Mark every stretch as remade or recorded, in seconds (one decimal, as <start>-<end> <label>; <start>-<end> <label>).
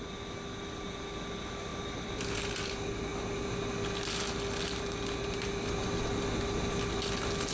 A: 0.0-7.5 recorded